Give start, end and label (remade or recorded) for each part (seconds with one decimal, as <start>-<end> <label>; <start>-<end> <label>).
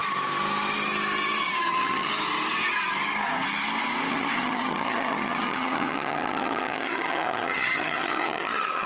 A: 0.0-1.4 recorded; 1.4-2.1 remade; 2.1-4.1 recorded; 4.1-8.9 remade